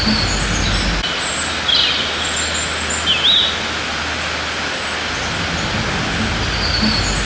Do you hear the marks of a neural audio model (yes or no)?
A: no